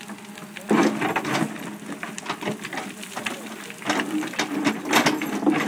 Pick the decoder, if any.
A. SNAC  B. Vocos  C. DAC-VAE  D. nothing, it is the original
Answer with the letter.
D